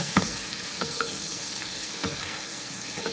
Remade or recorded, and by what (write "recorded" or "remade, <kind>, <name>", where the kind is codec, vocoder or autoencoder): remade, codec, SNAC